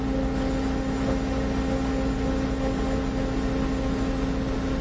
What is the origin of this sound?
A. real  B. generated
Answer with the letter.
A